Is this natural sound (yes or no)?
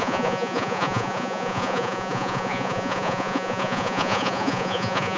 no